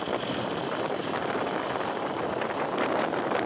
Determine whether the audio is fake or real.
fake